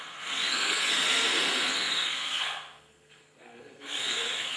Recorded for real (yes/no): no